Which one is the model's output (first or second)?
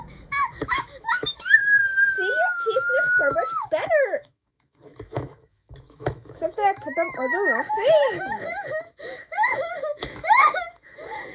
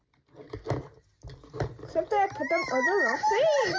first